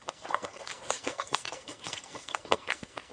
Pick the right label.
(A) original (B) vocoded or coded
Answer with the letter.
B